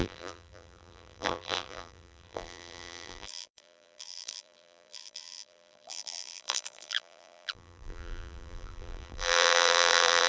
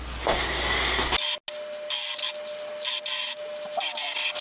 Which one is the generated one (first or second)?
first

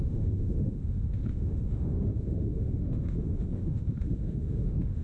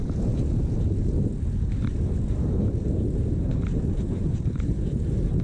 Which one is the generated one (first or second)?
first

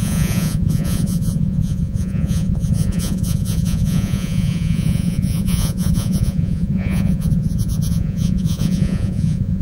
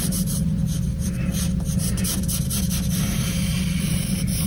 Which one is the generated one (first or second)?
first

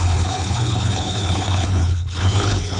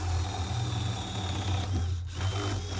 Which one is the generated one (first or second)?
first